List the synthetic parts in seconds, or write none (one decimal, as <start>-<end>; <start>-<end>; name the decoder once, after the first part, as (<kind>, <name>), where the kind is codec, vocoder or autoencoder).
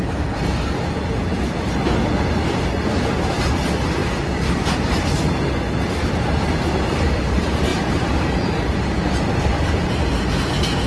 none